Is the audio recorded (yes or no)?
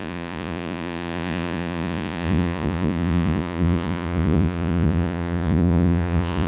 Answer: no